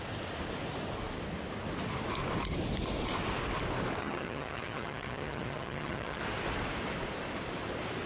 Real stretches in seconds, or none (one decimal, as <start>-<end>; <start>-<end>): 0.0-4.0; 6.2-8.1